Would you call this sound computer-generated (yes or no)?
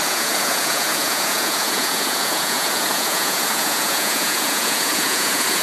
yes